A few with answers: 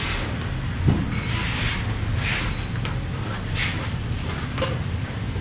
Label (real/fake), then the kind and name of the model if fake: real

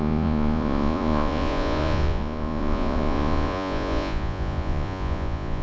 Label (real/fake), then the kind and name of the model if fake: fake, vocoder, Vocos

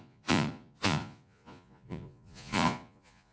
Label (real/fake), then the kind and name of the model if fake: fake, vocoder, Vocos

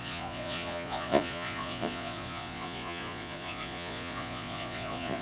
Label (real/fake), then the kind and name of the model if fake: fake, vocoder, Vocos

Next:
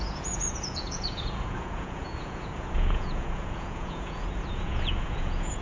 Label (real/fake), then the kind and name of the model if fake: fake, vocoder, Vocos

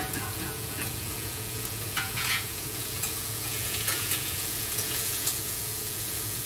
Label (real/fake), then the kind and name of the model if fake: fake, vocoder, Vocos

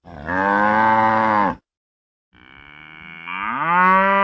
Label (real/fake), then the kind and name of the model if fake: real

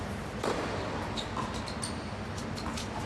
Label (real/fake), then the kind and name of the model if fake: real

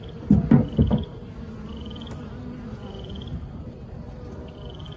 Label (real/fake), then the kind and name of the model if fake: real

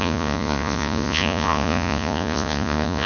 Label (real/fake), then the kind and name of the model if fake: fake, vocoder, Vocos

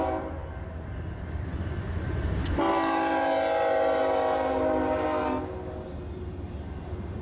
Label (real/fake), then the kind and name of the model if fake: real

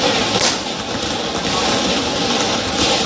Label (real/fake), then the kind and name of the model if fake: real